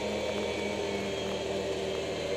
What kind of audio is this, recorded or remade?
recorded